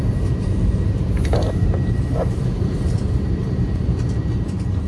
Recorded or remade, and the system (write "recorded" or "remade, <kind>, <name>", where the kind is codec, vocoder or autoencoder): remade, vocoder, BigVGAN v2